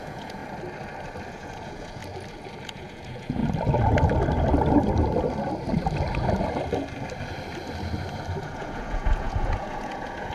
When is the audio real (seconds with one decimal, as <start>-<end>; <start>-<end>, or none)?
0.4-1.3; 2.0-2.6; 3.4-8.4